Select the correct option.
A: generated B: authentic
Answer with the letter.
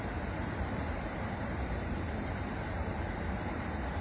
A